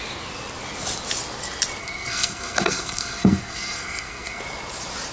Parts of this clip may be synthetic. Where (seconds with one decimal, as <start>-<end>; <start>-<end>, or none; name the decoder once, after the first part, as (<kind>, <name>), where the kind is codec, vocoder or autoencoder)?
1.8-4.4 (codec, SNAC)